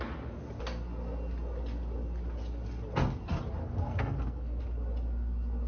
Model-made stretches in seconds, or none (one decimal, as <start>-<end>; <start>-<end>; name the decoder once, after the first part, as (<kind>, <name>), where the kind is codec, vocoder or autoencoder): 3.6-4.6 (codec, SNAC)